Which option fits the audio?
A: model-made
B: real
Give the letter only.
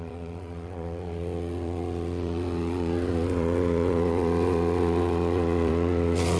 A